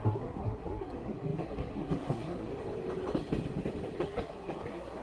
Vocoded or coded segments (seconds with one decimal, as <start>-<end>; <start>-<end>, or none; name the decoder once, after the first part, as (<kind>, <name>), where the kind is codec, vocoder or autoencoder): 0.0-2.5 (codec, SNAC); 4.0-5.0